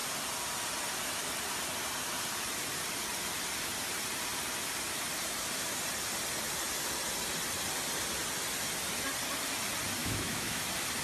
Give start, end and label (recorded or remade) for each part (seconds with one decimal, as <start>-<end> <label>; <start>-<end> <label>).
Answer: 0.0-10.0 recorded; 10.0-10.6 remade; 10.6-11.0 recorded